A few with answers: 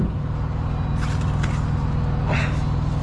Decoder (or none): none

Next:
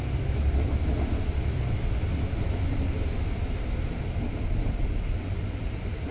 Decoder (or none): none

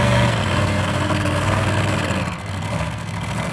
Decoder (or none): codec, SNAC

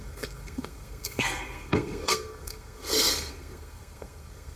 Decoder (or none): codec, SNAC